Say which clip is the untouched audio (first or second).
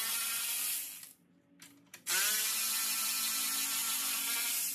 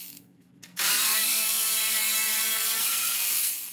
first